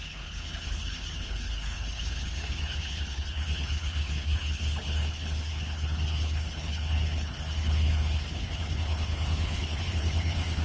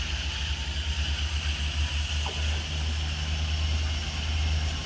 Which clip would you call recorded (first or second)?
second